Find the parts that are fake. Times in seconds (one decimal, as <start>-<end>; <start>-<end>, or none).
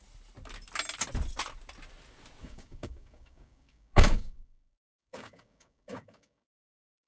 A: 2.4-7.1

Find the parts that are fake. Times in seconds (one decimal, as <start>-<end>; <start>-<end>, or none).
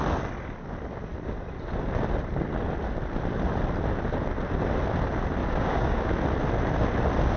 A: 5.4-6.1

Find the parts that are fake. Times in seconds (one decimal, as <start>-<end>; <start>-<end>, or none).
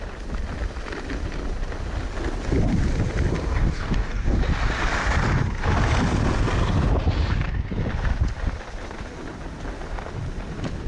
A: 3.5-4.4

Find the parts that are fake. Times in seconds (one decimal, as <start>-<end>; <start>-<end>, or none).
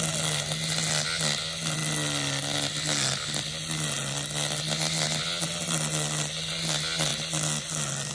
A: none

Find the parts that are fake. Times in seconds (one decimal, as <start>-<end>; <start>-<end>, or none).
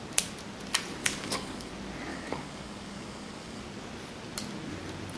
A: 1.0-1.7; 2.1-3.6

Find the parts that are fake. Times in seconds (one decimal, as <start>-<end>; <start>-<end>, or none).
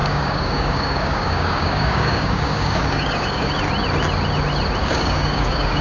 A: 0.0-3.5; 4.8-5.8